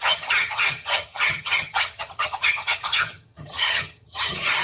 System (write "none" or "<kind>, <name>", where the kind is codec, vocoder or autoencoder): vocoder, HiFi-GAN